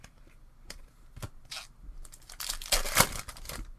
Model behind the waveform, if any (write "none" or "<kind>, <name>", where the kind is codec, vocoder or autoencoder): vocoder, BigVGAN v2